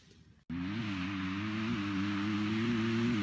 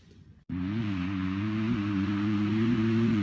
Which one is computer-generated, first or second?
second